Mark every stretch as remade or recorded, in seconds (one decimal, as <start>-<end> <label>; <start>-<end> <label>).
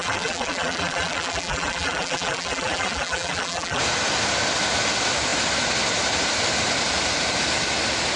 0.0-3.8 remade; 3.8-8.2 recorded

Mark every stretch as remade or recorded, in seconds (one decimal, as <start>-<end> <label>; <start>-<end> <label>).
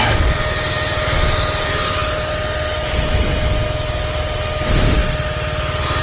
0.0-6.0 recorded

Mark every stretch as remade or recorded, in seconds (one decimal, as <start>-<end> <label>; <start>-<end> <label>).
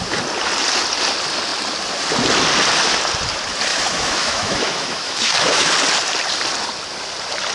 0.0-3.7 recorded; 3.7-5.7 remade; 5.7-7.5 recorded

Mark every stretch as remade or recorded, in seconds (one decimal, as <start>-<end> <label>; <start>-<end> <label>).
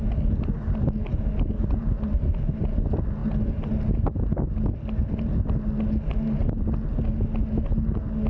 0.0-8.3 recorded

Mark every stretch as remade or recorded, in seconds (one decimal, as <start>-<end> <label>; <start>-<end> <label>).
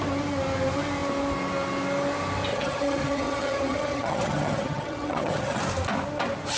0.0-2.5 recorded; 2.5-5.6 remade; 5.6-6.6 recorded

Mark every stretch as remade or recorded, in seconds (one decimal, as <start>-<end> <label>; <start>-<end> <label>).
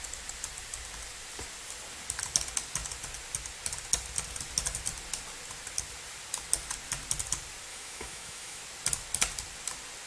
0.0-7.7 recorded; 7.7-8.6 remade; 8.6-10.1 recorded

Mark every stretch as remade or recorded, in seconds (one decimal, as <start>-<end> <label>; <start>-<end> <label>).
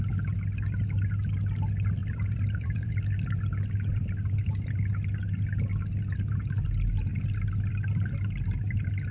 0.0-2.0 recorded; 2.0-2.9 remade; 2.9-9.1 recorded